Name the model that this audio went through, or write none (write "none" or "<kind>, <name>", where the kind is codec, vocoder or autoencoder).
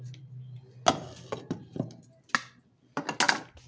none